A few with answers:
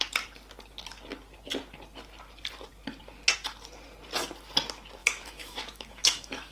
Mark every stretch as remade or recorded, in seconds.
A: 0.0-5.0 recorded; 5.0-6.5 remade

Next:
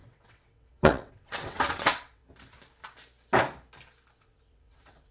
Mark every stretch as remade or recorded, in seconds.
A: 0.0-2.2 remade; 2.2-4.2 recorded; 4.2-5.1 remade